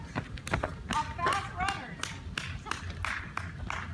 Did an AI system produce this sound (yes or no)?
no